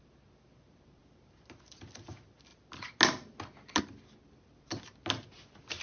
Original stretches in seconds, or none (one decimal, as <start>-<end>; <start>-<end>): 0.0-5.8